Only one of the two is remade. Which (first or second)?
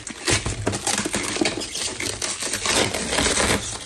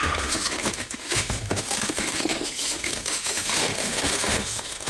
second